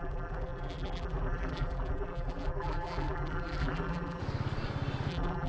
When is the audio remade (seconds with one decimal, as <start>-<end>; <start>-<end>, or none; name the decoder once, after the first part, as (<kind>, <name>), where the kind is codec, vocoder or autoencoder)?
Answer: 0.0-4.2 (vocoder, BigVGAN v2); 5.1-5.5